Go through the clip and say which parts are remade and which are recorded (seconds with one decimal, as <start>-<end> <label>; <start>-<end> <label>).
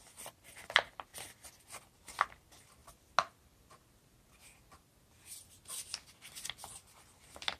0.0-7.6 recorded